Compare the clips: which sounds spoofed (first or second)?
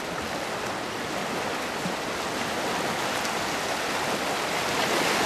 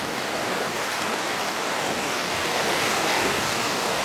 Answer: second